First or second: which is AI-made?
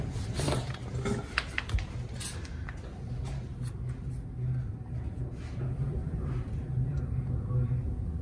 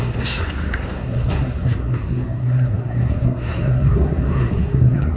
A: second